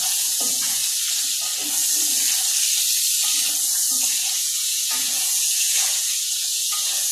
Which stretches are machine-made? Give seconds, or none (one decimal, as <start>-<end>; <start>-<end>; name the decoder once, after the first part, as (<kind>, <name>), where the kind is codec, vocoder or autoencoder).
0.0-0.8 (vocoder, Vocos); 4.1-7.1